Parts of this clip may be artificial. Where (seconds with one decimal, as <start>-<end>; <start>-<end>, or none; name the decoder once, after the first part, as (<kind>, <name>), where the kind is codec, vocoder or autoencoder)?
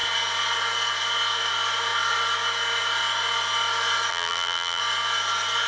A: 4.1-4.8 (vocoder, BigVGAN v2)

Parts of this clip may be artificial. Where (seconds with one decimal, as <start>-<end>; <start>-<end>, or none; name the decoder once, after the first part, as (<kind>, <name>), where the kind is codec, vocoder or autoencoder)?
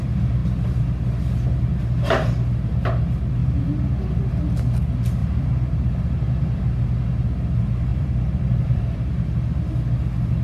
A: 3.4-4.3 (vocoder, BigVGAN v2); 5.2-6.7; 7.9-9.0